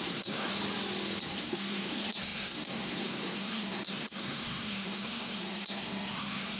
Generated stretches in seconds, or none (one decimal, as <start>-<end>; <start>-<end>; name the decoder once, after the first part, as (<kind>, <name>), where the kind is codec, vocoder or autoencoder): 0.0-0.5 (codec, SNAC); 1.2-6.6